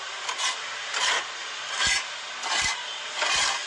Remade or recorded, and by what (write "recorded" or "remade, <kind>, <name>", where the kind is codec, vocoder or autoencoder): recorded